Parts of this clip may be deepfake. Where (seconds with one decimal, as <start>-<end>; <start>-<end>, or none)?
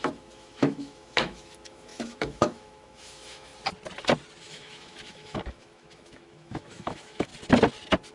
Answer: 0.0-3.5; 4.4-7.3